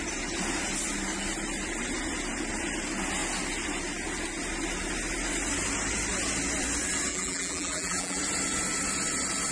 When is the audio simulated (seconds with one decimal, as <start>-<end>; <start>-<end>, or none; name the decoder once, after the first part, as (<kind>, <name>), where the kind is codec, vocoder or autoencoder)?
7.1-8.2 (vocoder, BigVGAN v2)